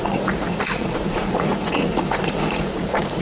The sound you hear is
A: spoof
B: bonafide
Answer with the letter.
A